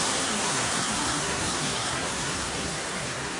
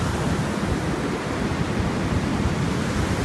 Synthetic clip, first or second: first